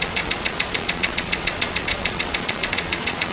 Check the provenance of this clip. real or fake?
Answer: fake